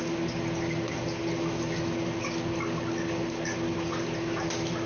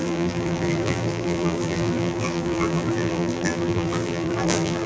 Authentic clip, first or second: first